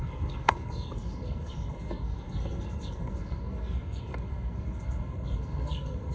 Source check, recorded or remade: remade